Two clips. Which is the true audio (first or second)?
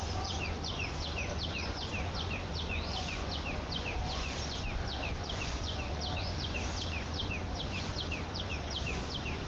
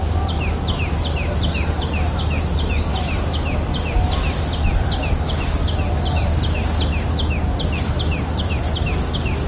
second